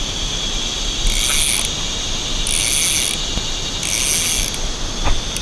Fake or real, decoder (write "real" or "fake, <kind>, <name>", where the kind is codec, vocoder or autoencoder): real